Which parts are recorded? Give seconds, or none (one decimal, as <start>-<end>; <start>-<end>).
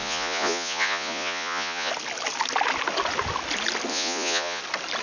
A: 1.9-3.9; 4.6-5.0